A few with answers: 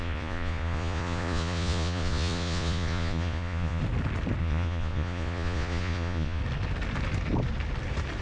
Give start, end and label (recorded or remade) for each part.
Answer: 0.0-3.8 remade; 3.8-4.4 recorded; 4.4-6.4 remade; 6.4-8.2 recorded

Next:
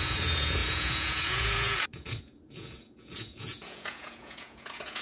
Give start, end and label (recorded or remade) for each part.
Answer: 0.0-5.0 remade

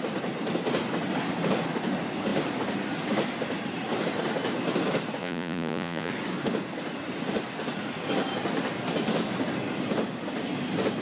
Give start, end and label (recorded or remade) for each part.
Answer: 0.0-5.2 recorded; 5.2-6.1 remade; 6.1-11.0 recorded

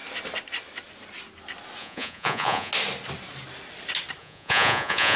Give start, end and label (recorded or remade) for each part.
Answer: 0.0-1.8 recorded; 1.8-2.7 remade; 2.7-4.2 recorded; 4.2-5.2 remade